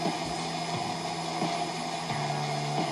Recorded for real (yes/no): yes